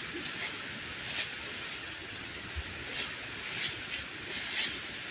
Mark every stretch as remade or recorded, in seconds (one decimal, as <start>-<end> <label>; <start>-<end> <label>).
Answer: 0.0-1.8 recorded; 1.8-2.5 remade; 2.5-5.1 recorded

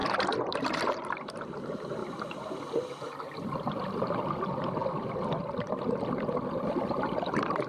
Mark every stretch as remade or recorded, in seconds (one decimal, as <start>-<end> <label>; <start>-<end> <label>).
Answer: 0.0-7.7 recorded